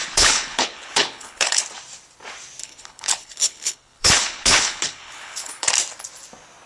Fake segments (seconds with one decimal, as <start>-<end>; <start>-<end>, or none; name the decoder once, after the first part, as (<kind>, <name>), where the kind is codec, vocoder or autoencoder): 0.0-1.6 (codec, HILCodec); 2.6-5.7